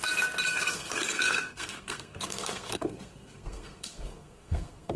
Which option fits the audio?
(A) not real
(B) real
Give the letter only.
A